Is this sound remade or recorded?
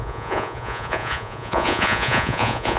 remade